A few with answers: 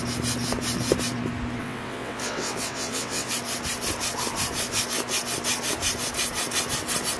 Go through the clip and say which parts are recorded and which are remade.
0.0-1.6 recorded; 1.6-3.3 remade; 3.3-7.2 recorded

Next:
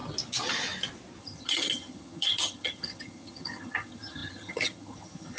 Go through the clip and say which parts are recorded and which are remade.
0.0-1.2 recorded; 1.2-5.4 remade

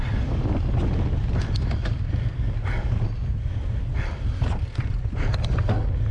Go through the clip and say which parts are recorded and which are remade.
0.0-0.8 remade; 0.8-1.6 recorded; 1.6-2.3 remade; 2.3-4.8 recorded; 4.8-6.1 remade

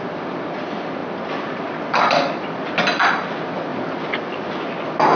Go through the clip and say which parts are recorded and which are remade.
0.0-1.0 recorded; 1.0-2.7 remade; 2.7-3.7 recorded; 3.7-4.4 remade; 4.4-5.2 recorded

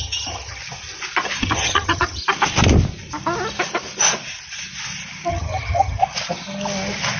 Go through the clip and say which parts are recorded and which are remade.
0.0-0.6 remade; 0.6-1.4 recorded; 1.4-2.2 remade; 2.2-5.3 recorded; 5.3-6.0 remade; 6.0-7.2 recorded

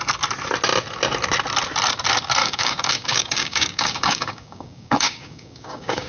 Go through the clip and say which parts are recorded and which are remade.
0.0-2.4 recorded; 2.4-6.1 remade

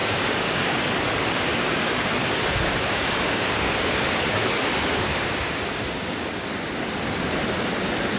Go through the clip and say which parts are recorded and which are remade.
0.0-0.9 remade; 0.9-1.5 recorded; 1.5-6.4 remade; 6.4-8.2 recorded